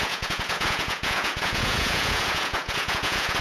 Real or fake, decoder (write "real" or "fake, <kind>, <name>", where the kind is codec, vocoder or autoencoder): fake, vocoder, Vocos